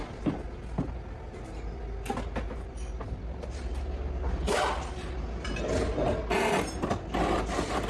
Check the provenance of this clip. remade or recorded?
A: recorded